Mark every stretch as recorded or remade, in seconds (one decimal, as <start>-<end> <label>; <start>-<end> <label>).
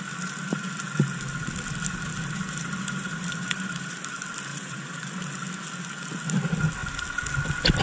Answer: 0.0-2.1 recorded; 2.1-4.0 remade; 4.0-4.5 recorded; 4.5-5.1 remade; 5.1-7.8 recorded